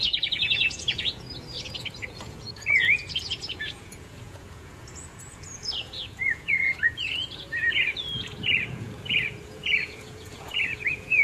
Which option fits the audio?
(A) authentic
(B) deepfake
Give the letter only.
B